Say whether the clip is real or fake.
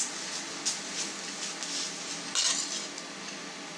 real